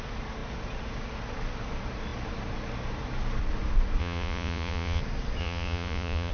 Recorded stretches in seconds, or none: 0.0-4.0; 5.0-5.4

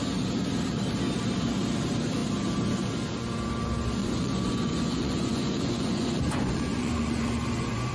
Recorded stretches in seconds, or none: 0.0-4.0

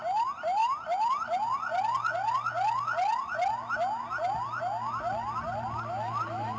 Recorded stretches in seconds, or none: 0.0-6.6

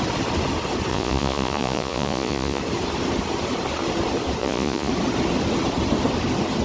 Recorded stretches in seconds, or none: 0.0-0.9; 2.6-4.4; 4.9-6.6

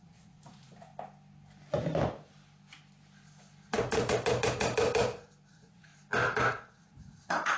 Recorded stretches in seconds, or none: 0.9-5.5; 5.9-6.5

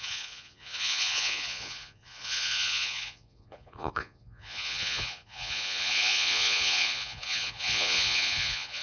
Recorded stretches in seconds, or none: none